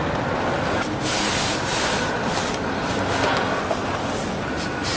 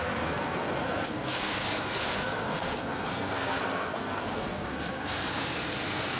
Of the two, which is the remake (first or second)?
second